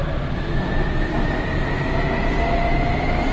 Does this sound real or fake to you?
real